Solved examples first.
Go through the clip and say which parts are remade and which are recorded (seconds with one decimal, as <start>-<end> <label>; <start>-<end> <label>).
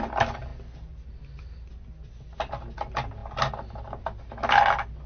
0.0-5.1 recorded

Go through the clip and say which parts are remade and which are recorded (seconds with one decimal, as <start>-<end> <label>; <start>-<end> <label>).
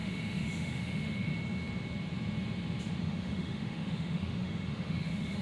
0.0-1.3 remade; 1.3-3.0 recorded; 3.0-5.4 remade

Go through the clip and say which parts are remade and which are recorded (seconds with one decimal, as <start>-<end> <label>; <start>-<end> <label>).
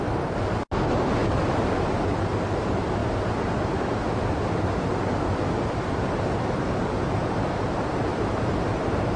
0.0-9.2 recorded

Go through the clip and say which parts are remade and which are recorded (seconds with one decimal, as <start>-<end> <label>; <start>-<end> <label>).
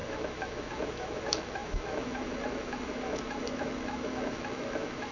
0.0-5.1 remade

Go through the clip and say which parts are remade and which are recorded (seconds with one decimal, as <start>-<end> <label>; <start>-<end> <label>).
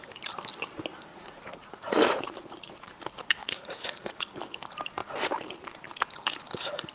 0.0-1.1 recorded; 1.1-2.9 remade; 2.9-3.4 recorded; 3.4-4.4 remade; 4.4-6.9 recorded